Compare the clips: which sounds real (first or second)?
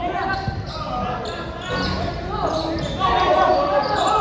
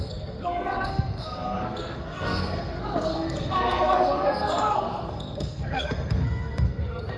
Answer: first